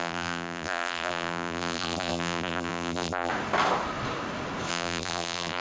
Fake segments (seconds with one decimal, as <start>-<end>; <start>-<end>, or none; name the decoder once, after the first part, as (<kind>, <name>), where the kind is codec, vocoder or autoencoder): 0.0-3.3 (vocoder, BigVGAN v2); 4.7-5.6